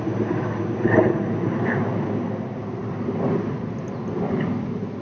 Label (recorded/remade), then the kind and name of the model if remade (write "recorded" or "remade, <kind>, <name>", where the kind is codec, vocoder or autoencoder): recorded